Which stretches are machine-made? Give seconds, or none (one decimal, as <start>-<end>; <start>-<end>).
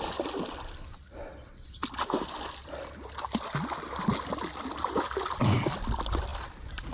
none